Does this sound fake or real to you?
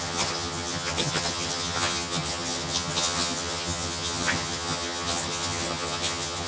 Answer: fake